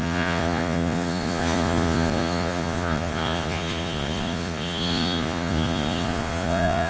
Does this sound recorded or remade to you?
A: remade